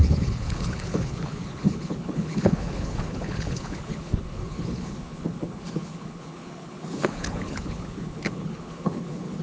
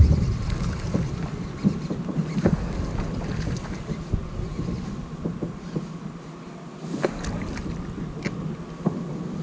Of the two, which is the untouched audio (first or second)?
second